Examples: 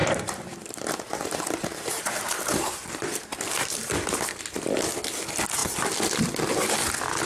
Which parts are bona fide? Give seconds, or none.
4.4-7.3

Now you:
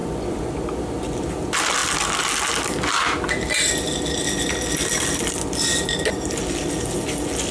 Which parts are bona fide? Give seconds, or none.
0.5-7.5

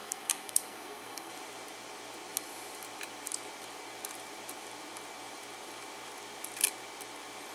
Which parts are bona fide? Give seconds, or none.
1.3-7.5

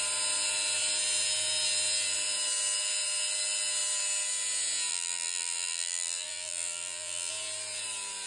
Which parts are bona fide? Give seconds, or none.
0.0-4.9; 7.3-8.3

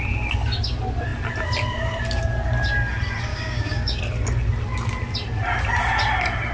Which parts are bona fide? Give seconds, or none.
0.0-3.3; 4.0-6.5

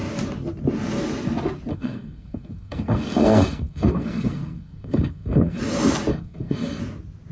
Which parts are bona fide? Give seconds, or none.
0.0-1.7; 5.6-6.1; 6.8-7.3

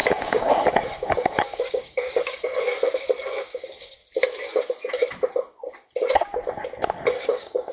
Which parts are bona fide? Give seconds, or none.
2.7-3.4; 4.0-7.1